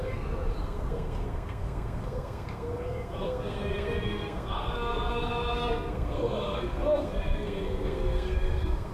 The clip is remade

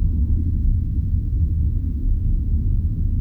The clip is remade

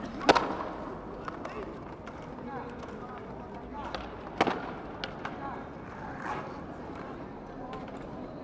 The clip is recorded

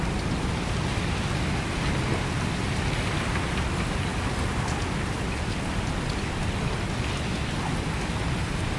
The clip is recorded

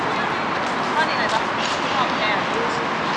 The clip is recorded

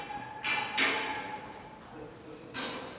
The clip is recorded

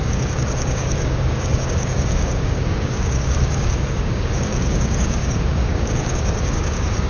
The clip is remade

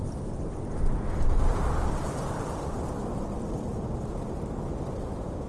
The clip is recorded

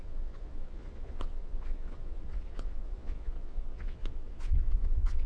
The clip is remade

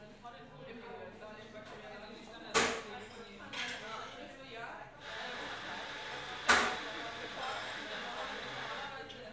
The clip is recorded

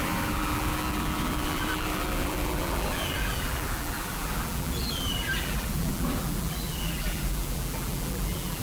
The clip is remade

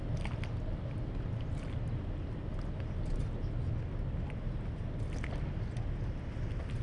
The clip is recorded